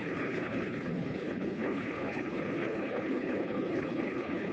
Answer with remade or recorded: remade